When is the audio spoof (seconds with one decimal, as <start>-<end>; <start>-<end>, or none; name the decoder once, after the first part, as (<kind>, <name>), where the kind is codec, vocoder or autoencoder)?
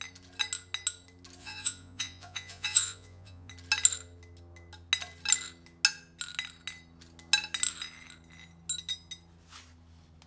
1.4-3.5 (vocoder, Vocos)